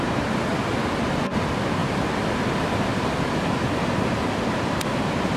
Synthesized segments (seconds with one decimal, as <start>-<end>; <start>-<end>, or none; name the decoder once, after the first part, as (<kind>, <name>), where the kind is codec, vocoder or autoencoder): 0.0-0.5 (vocoder, BigVGAN v2); 1.1-1.8; 5.0-5.4